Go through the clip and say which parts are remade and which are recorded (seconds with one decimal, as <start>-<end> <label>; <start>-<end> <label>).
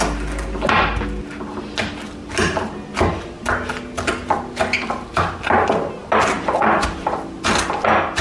0.0-8.2 recorded